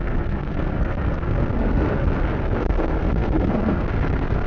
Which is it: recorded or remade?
remade